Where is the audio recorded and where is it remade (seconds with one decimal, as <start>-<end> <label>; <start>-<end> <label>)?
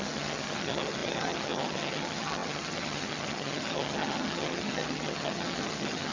0.0-6.1 remade